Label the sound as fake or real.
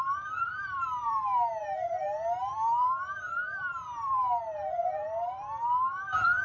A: fake